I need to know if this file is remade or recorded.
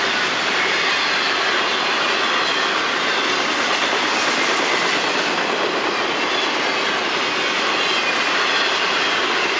recorded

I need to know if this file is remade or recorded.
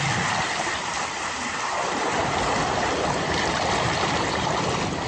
recorded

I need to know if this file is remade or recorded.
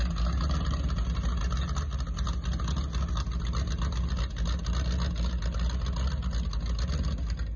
recorded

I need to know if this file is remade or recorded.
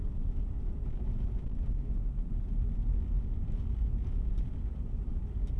recorded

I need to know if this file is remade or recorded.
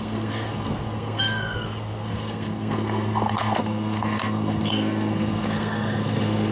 remade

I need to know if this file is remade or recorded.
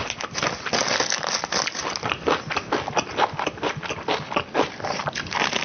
recorded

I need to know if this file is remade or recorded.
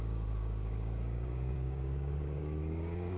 remade